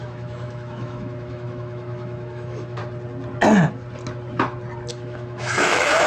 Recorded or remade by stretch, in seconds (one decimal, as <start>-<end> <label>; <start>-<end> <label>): 0.0-2.8 remade; 2.8-4.9 recorded; 4.9-6.1 remade